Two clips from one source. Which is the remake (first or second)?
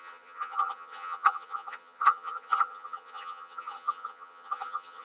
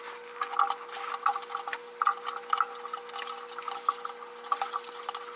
first